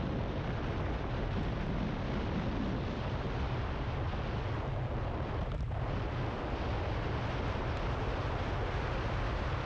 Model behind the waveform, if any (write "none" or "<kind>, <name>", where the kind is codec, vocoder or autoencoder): none